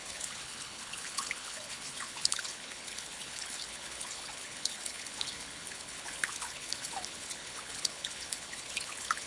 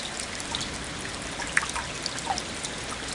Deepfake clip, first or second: first